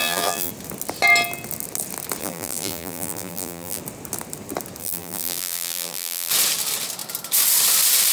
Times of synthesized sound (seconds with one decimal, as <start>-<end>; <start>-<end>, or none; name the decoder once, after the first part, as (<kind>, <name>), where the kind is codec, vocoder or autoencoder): 0.0-0.5 (vocoder, BigVGAN v2); 2.2-3.8; 4.8-6.3